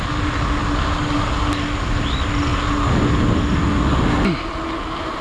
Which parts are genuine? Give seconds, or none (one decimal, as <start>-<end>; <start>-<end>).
0.0-5.2